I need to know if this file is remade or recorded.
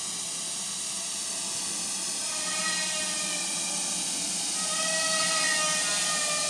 recorded